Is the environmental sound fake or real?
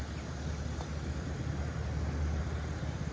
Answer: real